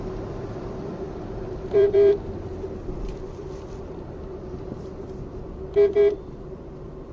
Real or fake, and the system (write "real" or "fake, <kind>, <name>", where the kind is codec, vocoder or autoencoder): fake, vocoder, BigVGAN v2